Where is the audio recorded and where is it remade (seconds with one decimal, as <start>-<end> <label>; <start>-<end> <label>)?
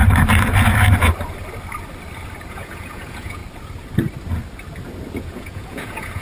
0.0-2.5 recorded; 2.5-3.4 remade; 3.4-5.2 recorded; 5.2-6.2 remade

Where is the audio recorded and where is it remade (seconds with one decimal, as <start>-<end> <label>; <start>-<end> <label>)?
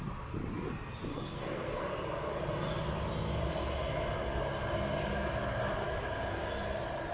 0.0-1.1 recorded; 1.1-1.9 remade; 1.9-7.1 recorded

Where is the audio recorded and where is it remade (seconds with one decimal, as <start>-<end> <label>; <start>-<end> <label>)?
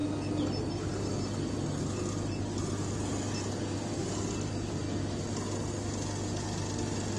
0.0-7.2 recorded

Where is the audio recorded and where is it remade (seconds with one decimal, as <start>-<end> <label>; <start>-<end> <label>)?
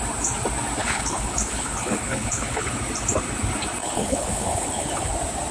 0.0-0.8 recorded; 0.8-2.8 remade; 2.8-3.8 recorded; 3.8-5.1 remade; 5.1-5.5 recorded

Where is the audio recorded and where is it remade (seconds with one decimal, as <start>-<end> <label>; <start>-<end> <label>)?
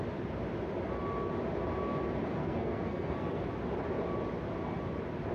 0.0-2.4 recorded; 2.4-3.4 remade; 3.4-5.3 recorded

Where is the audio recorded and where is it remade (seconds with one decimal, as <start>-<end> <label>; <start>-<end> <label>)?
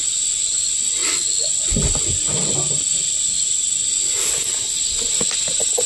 0.0-5.9 recorded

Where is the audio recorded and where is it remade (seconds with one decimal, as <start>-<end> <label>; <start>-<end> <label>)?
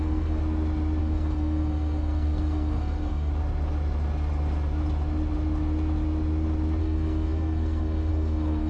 0.0-0.4 remade; 0.4-1.0 recorded; 1.0-3.3 remade; 3.3-6.8 recorded; 6.8-8.7 remade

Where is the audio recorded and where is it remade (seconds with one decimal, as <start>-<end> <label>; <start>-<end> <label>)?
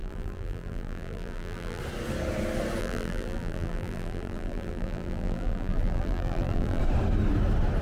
0.0-1.8 remade; 1.8-2.8 recorded; 2.8-6.8 remade; 6.8-7.8 recorded